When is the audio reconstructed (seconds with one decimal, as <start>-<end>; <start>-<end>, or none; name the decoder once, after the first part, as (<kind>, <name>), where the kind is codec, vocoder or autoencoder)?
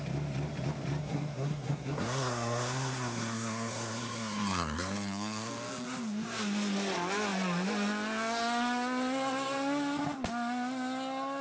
1.0-5.5 (codec, SNAC)